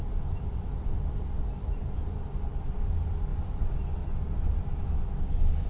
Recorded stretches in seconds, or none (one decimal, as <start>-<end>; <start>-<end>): 0.0-5.7

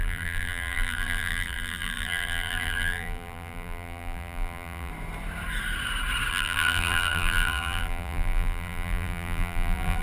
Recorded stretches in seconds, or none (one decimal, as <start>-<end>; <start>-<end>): 4.9-6.3

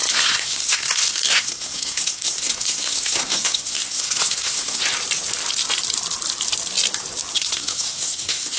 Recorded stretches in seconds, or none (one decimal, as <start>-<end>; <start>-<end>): 4.8-7.3

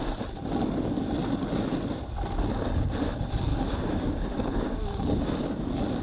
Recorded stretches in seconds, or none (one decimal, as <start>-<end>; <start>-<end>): 0.0-3.5; 5.4-6.0

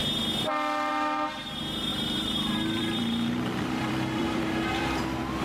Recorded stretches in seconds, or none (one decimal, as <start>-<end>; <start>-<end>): 0.0-1.9; 4.8-5.4

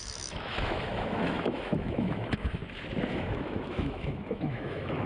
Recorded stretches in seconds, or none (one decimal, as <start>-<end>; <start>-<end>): 2.6-3.1